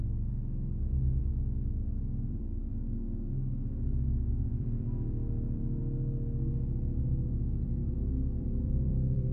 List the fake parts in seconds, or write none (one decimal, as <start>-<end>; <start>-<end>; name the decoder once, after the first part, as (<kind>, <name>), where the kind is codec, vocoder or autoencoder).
0.0-0.4 (vocoder, BigVGAN v2); 1.2-2.7; 4.3-5.8; 7.3-9.3